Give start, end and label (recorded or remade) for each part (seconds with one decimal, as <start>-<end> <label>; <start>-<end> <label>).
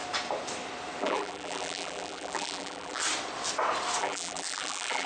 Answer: 0.0-1.0 recorded; 1.0-3.0 remade; 3.0-4.0 recorded; 4.0-5.1 remade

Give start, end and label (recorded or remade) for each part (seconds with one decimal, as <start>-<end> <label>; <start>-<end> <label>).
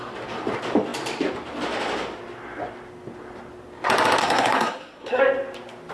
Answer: 0.0-4.2 recorded; 4.2-5.2 remade; 5.2-5.9 recorded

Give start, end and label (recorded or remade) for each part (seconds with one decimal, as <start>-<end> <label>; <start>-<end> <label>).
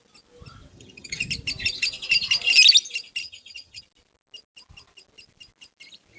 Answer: 0.0-0.7 recorded; 0.7-1.3 remade; 1.3-3.2 recorded; 3.2-3.8 remade; 3.8-6.2 recorded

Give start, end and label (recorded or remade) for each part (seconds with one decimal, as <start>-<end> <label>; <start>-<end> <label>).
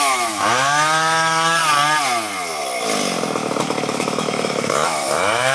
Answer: 0.0-1.6 remade; 1.6-3.6 recorded; 3.6-5.5 remade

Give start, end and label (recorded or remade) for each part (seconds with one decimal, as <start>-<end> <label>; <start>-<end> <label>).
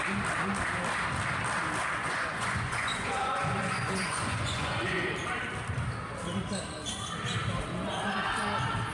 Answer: 0.0-2.0 recorded; 2.0-5.1 remade; 5.1-8.9 recorded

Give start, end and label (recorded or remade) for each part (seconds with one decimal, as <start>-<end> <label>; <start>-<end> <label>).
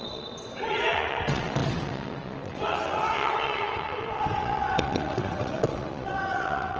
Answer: 0.0-6.8 remade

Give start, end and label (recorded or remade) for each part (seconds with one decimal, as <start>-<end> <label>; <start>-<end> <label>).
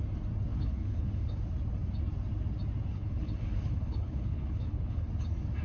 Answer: 0.0-0.5 recorded; 0.5-1.5 remade; 1.5-2.9 recorded; 2.9-5.1 remade; 5.1-5.6 recorded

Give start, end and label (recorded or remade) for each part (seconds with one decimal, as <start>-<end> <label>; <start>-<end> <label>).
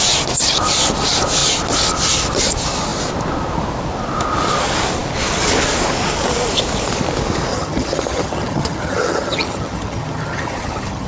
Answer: 0.0-7.5 recorded; 7.5-11.1 remade